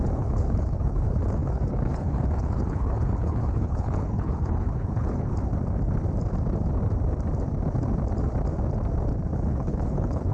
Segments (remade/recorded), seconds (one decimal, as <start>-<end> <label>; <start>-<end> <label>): 0.0-5.3 remade; 5.3-9.5 recorded; 9.5-10.3 remade